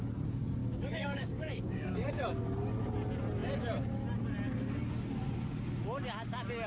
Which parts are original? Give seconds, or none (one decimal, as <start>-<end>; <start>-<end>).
0.0-0.6; 2.2-6.7